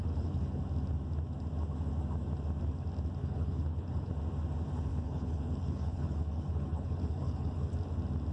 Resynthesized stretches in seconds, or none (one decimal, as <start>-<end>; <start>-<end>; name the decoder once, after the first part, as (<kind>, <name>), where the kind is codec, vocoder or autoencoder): 0.0-0.6 (codec, HILCodec); 3.2-4.1; 4.9-7.7